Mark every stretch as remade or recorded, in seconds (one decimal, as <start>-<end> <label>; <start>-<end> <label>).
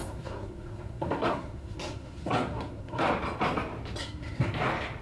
0.0-3.0 remade; 3.0-4.0 recorded; 4.0-4.5 remade; 4.5-5.0 recorded